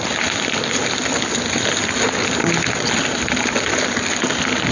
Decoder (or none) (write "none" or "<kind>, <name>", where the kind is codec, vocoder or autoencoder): none